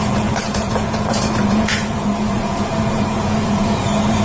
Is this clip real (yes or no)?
no